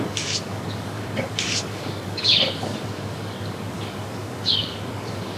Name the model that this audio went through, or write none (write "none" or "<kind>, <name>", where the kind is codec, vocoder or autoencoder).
codec, DAC